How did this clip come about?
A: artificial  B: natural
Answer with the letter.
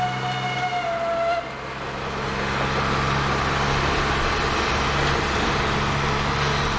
B